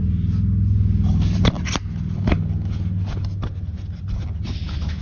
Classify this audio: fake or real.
real